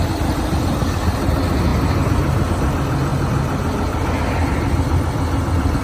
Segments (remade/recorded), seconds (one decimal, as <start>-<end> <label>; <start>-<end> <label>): 0.0-5.8 recorded